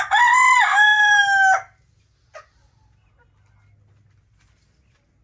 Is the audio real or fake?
real